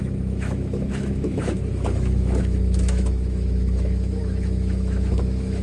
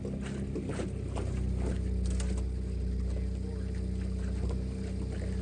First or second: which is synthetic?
first